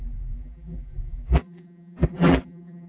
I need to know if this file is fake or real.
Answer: fake